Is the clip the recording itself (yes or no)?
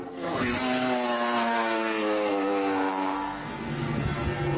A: no